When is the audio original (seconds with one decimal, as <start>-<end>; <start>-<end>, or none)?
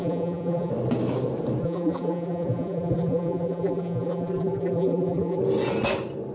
0.7-1.6; 5.4-6.3